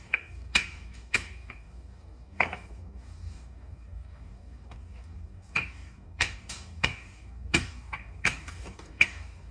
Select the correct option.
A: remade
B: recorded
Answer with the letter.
A